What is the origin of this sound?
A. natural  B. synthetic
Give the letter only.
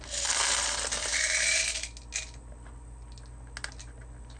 A